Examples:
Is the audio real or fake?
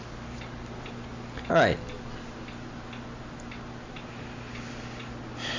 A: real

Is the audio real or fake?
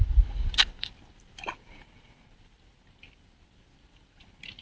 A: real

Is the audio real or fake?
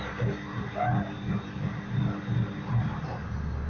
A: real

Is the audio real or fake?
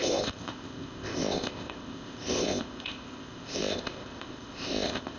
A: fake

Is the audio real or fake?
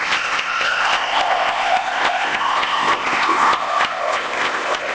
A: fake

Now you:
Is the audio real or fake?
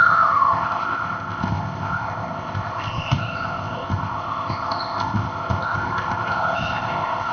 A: fake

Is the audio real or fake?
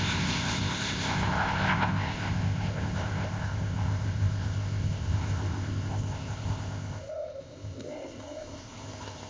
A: fake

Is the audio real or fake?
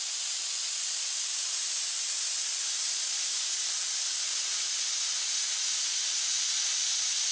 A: real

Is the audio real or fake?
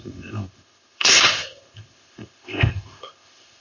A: fake